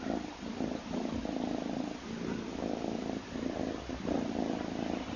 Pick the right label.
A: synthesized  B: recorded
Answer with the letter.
B